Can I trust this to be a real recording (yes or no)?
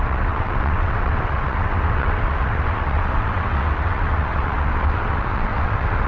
no